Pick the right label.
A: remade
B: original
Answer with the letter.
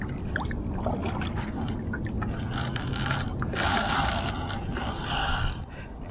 B